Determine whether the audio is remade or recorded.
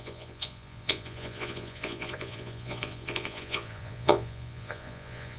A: remade